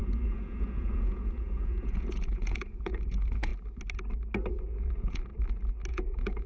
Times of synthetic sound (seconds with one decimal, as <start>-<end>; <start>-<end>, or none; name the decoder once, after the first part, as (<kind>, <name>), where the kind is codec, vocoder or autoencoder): 0.0-3.5 (vocoder, Vocos); 4.5-5.3; 5.9-6.5